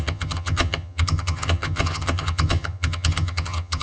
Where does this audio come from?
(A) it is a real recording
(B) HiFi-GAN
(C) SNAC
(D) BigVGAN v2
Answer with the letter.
B